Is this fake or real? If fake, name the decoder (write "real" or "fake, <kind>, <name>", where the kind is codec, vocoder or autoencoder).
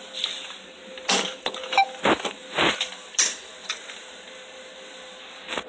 real